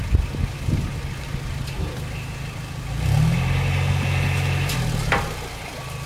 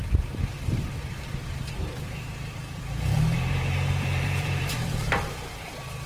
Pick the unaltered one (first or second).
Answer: first